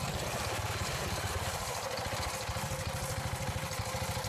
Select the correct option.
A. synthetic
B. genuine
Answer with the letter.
A